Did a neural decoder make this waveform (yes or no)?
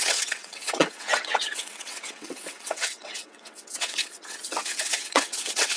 yes